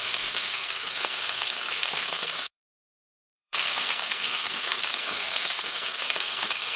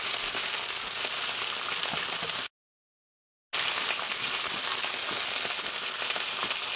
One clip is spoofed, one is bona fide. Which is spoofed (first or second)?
first